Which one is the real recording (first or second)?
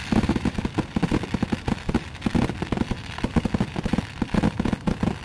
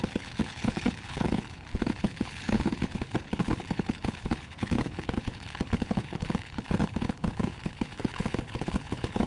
first